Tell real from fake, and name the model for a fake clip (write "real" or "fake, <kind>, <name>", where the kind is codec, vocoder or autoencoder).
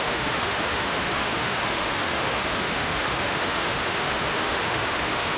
fake, autoencoder, DAC-VAE